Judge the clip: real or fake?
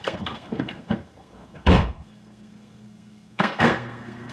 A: fake